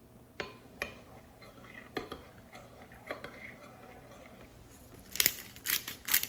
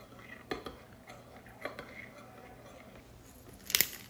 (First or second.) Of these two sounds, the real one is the second